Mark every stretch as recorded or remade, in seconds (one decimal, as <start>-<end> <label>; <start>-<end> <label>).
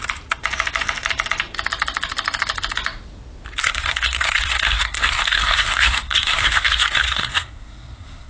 0.0-3.6 recorded; 3.6-8.3 remade